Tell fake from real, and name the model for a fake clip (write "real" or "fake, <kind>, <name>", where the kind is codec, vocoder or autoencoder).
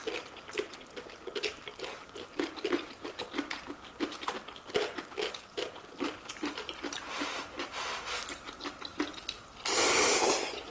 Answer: real